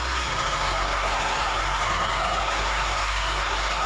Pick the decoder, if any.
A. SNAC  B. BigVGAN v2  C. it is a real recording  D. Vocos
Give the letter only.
A